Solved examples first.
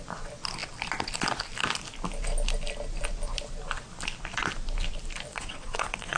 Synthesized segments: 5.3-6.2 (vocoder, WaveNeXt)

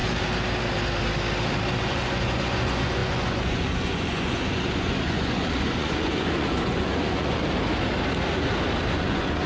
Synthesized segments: 1.8-7.4 (vocoder, Vocos); 8.9-9.5

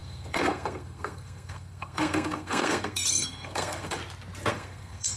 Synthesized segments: 0.0-4.0 (codec, SNAC); 4.5-5.2

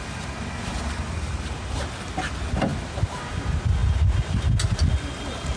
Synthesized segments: none